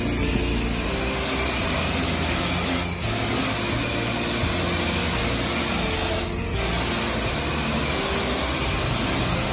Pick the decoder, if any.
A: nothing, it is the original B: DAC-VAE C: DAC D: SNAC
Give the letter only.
A